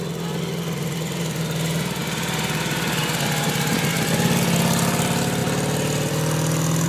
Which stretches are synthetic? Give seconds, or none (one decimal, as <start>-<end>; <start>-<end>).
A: none